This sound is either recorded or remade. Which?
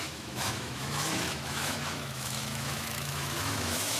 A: remade